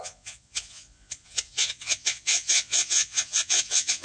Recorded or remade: remade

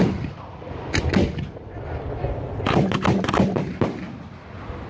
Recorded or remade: recorded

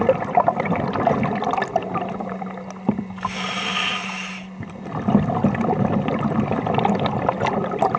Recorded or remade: recorded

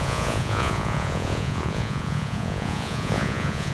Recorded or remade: remade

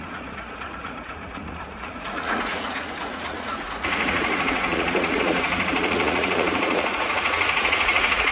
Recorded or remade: remade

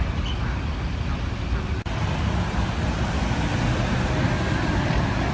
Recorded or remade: recorded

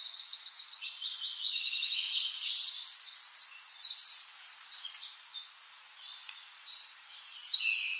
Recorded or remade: remade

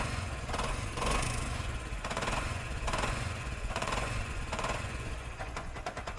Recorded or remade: remade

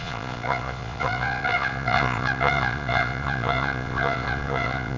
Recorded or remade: remade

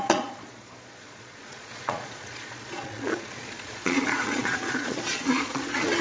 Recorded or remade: remade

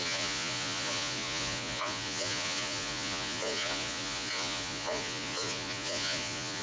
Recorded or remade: remade